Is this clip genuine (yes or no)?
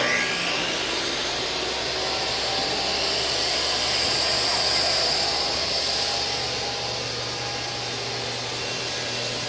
yes